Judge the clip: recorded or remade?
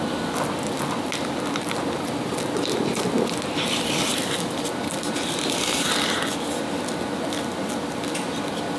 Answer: recorded